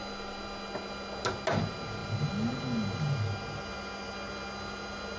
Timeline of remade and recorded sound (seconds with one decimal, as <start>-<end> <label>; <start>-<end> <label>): 0.0-5.2 recorded